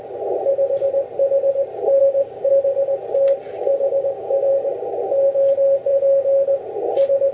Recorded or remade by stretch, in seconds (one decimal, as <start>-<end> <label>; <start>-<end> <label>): 0.0-2.0 recorded; 2.0-2.5 remade; 2.5-3.7 recorded; 3.7-4.5 remade; 4.5-7.3 recorded